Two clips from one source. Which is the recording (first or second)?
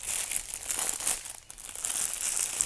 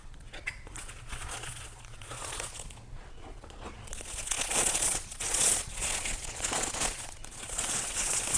first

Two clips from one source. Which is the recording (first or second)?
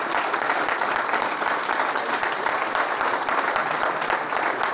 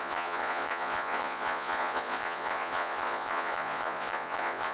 first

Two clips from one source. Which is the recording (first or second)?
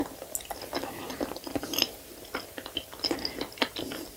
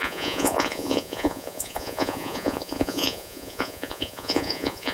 first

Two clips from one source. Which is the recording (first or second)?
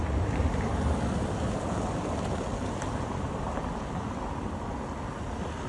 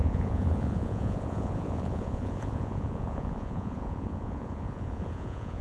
first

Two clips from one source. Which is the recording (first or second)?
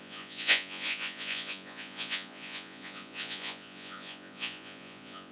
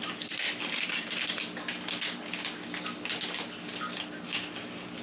second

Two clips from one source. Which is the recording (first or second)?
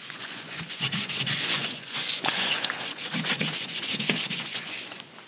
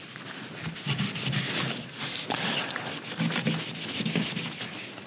second